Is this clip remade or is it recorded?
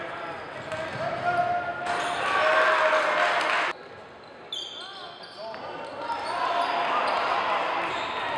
recorded